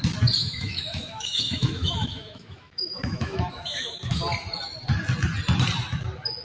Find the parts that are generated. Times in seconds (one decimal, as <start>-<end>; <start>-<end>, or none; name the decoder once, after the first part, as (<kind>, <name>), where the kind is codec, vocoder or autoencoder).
0.4-4.2 (autoencoder, DAC-VAE)